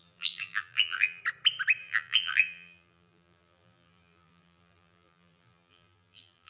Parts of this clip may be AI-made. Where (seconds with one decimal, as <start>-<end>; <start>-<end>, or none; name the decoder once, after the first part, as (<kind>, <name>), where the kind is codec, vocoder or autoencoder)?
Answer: 0.0-1.2 (vocoder, BigVGAN v2); 1.8-6.5